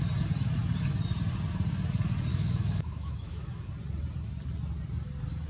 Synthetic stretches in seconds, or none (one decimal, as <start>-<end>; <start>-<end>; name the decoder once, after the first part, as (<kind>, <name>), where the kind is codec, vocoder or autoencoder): 2.3-3.7 (autoencoder, DAC-VAE)